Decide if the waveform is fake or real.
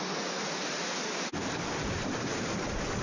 real